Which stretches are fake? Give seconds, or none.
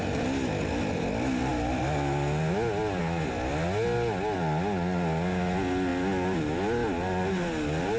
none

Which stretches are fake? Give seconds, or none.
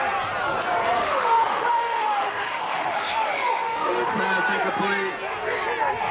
1.0-4.1 (autoencoder, DAC-VAE)